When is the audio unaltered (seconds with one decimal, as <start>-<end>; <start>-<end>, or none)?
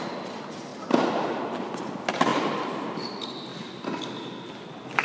0.0-0.7; 1.4-3.5; 4.1-5.0